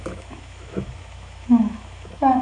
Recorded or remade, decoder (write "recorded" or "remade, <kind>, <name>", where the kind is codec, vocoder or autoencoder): remade, autoencoder, DAC-VAE